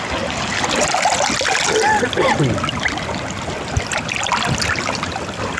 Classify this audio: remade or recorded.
recorded